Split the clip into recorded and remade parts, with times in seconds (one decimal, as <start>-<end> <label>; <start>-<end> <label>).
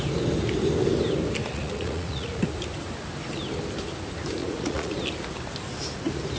0.0-1.4 recorded; 1.4-2.4 remade; 2.4-4.4 recorded; 4.4-4.9 remade; 4.9-6.4 recorded